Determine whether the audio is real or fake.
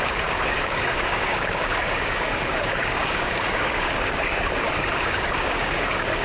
fake